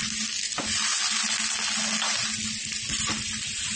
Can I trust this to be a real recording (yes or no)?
yes